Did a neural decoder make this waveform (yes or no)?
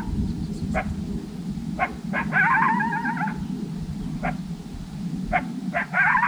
no